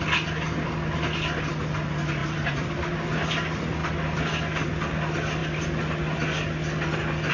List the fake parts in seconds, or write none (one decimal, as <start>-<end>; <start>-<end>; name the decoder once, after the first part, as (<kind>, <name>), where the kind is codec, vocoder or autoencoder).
2.2-2.9 (vocoder, BigVGAN v2); 3.8-4.7

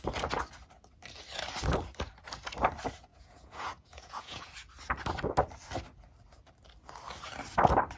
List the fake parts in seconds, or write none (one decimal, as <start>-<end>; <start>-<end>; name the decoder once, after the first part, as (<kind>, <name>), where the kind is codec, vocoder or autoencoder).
3.1-4.5 (vocoder, Vocos)

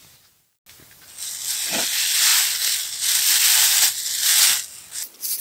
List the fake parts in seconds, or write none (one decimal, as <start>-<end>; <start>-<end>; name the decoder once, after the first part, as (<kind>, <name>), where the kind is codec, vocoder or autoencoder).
none

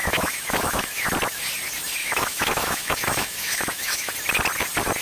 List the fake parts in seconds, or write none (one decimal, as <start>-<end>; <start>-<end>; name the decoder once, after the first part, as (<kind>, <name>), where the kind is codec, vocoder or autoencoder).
0.0-1.0 (autoencoder, DAC-VAE); 2.0-4.1

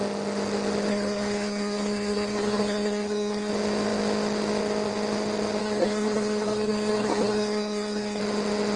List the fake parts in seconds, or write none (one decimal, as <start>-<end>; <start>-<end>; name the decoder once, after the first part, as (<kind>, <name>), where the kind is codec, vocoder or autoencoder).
0.9-3.5 (codec, SNAC); 5.6-8.2